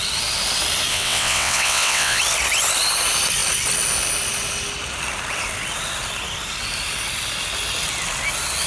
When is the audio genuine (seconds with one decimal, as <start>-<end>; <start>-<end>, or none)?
0.0-0.9; 2.2-8.7